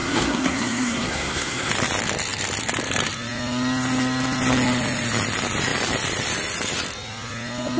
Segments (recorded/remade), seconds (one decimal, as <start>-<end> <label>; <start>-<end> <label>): 0.0-1.7 remade; 1.7-7.8 recorded